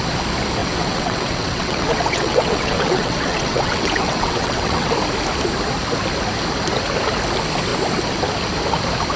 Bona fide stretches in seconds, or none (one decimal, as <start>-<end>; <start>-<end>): 0.0-0.6; 4.9-9.2